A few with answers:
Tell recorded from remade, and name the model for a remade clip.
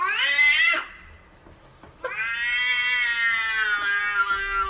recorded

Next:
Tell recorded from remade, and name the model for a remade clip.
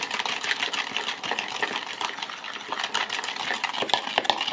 recorded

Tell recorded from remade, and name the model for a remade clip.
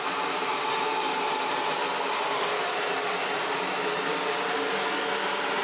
recorded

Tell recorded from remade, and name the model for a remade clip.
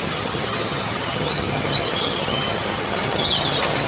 remade, vocoder, HiFi-GAN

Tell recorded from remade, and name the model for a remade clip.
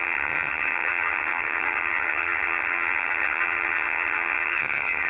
remade, vocoder, HiFi-GAN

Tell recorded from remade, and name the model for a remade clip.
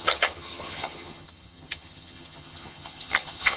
remade, vocoder, HiFi-GAN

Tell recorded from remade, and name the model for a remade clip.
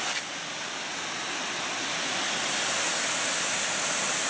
recorded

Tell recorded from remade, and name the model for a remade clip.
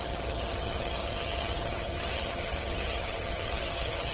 remade, vocoder, HiFi-GAN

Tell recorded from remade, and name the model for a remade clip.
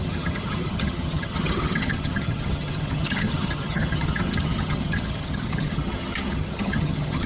remade, vocoder, HiFi-GAN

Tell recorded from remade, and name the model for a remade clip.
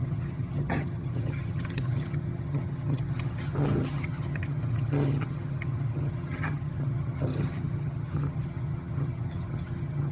remade, vocoder, HiFi-GAN